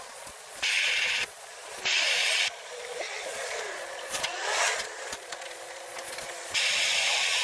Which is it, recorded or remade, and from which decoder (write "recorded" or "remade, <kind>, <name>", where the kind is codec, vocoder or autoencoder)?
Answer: remade, vocoder, Vocos